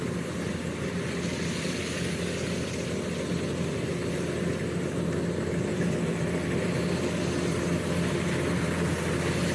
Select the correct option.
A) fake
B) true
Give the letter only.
B